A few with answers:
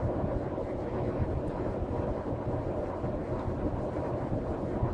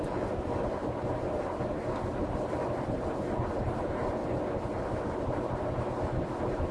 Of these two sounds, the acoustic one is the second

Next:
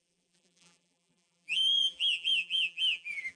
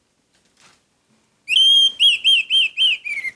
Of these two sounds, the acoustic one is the second